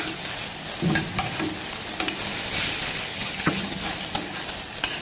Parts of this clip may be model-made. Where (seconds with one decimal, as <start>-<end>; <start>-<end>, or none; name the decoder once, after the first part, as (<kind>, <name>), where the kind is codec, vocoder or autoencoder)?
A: 3.1-3.8 (vocoder, HiFi-GAN)